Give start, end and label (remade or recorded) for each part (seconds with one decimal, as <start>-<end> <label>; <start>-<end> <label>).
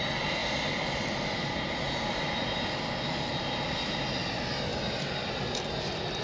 0.0-6.2 recorded